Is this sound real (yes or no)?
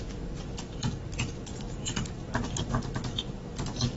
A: yes